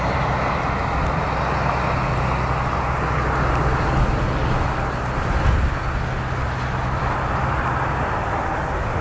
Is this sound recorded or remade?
recorded